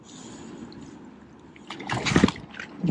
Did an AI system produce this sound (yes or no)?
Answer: no